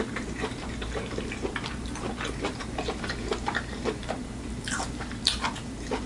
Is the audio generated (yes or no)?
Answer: yes